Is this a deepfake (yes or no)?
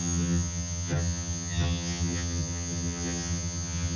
yes